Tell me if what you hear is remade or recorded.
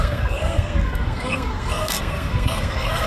remade